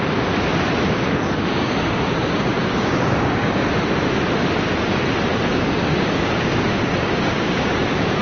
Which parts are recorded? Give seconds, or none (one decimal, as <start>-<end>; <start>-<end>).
0.0-1.5; 3.6-5.5